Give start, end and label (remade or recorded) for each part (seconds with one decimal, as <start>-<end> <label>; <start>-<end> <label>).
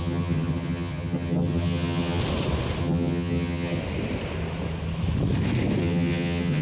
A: 0.0-2.2 remade; 2.2-2.8 recorded; 2.8-3.8 remade; 3.8-5.8 recorded; 5.8-6.6 remade